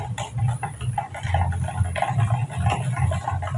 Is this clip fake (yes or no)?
no